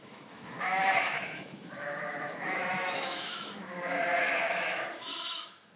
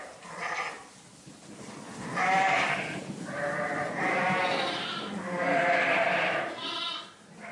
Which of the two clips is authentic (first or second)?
second